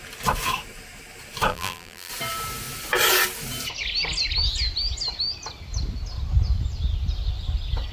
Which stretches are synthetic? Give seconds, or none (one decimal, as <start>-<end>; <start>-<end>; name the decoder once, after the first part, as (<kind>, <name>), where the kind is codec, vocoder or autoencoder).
1.5-2.1 (vocoder, BigVGAN v2)